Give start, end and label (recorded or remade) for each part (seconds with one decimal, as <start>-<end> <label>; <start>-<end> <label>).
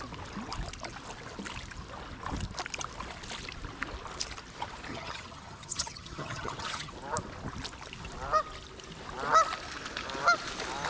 0.0-4.9 recorded; 4.9-6.9 remade; 6.9-10.9 recorded